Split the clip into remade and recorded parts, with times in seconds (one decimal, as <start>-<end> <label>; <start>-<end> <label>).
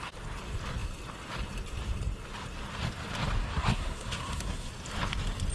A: 0.0-3.4 recorded; 3.4-4.7 remade; 4.7-5.5 recorded